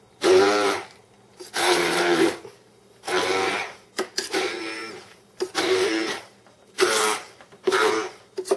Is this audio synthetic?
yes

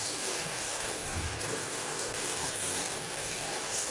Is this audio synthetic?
yes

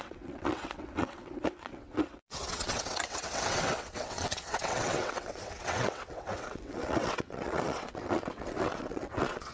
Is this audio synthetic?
yes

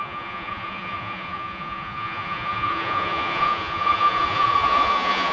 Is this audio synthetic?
yes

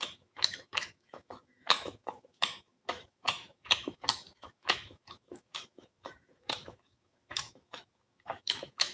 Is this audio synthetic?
yes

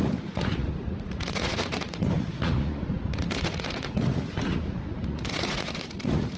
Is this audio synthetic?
yes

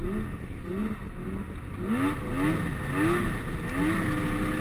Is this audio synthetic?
no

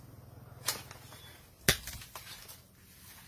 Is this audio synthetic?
no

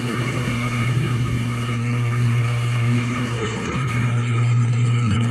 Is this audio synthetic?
yes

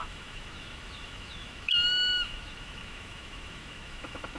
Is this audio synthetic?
yes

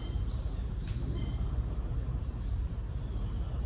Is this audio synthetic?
yes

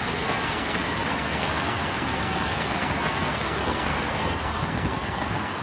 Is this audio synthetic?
yes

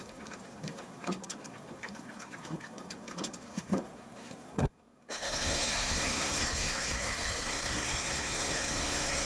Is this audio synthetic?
yes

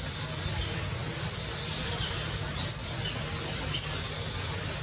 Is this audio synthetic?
no